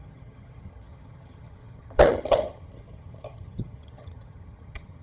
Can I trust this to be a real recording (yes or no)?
no